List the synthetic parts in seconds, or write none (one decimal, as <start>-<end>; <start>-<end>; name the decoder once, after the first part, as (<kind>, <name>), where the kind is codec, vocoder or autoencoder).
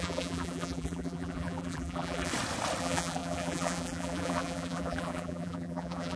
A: 0.0-2.3 (vocoder, BigVGAN v2); 2.8-6.2